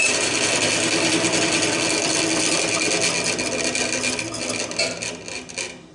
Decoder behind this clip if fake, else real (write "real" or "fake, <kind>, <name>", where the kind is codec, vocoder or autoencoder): real